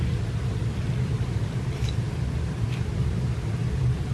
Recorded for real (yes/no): no